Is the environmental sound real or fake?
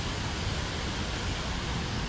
real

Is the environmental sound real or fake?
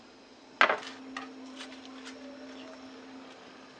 real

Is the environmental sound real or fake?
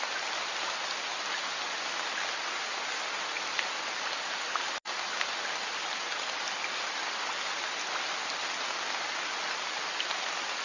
real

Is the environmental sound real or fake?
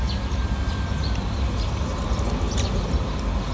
real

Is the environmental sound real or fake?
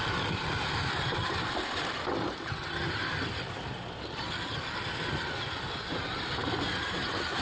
fake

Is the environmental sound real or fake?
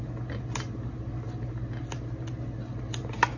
real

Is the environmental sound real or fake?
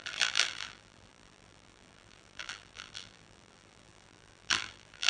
fake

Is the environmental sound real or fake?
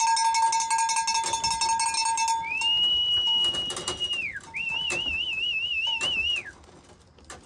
real